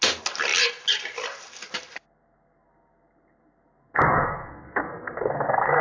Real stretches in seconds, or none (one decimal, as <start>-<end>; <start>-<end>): 0.0-4.1